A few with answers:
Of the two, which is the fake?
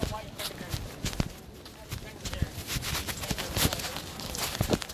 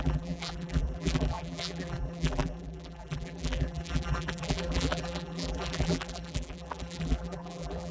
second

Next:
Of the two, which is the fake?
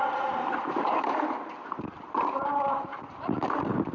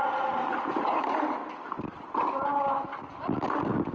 first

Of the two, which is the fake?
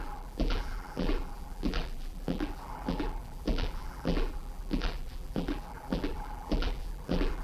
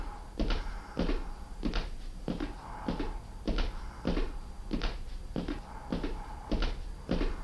first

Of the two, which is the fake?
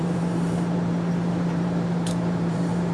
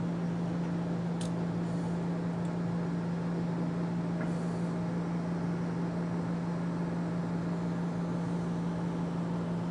first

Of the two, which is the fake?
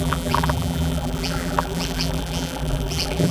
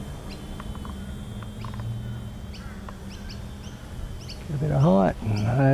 first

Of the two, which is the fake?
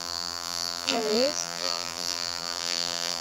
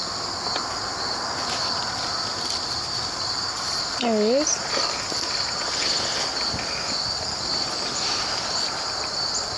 first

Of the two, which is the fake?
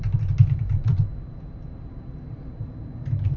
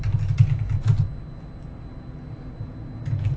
first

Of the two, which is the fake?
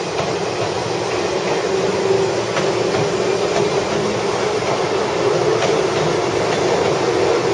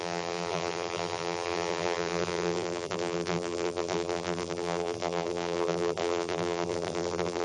second